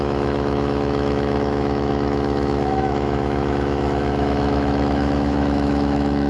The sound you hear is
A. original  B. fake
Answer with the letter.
B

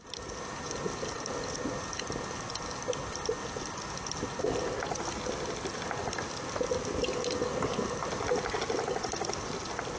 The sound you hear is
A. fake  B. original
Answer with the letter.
B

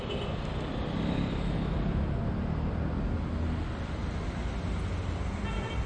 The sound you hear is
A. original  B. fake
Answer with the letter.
A